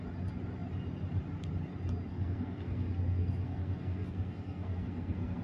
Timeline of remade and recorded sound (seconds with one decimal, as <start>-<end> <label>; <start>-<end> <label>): 0.0-2.1 recorded; 2.1-5.4 remade